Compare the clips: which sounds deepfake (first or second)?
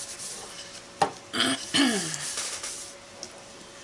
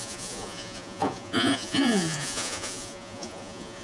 second